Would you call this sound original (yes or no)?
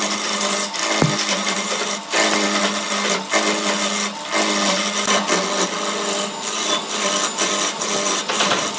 yes